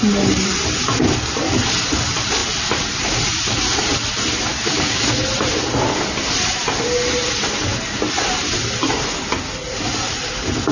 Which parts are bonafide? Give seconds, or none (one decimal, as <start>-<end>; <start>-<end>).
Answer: 0.0-4.5; 5.1-10.7